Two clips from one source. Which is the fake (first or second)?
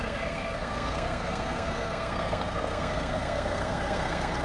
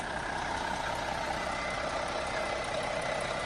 first